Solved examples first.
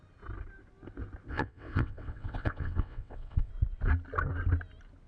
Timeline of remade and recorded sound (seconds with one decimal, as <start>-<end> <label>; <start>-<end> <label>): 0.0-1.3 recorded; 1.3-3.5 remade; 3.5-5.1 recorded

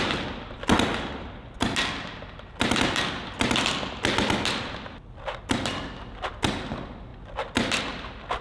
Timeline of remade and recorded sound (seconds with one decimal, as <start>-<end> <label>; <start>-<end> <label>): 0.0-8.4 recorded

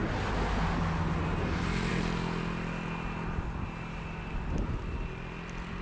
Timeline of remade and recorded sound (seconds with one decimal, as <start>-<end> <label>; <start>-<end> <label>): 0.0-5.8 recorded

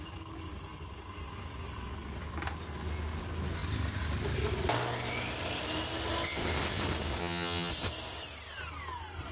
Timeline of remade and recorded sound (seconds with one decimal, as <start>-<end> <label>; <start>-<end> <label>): 0.0-7.2 recorded; 7.2-7.7 remade; 7.7-9.3 recorded

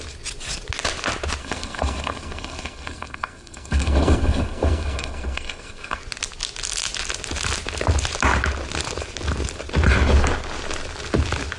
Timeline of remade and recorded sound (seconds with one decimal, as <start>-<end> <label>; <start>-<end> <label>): 0.0-1.4 recorded; 1.4-6.0 remade; 6.0-11.6 recorded

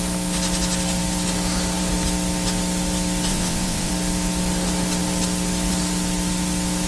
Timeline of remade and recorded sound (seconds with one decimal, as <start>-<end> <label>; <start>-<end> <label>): 0.0-3.3 recorded; 3.3-3.9 remade; 3.9-6.9 recorded